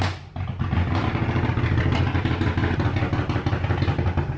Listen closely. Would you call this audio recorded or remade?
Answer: recorded